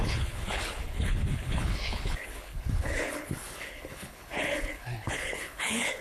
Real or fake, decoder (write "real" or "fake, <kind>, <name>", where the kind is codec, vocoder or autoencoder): fake, codec, HILCodec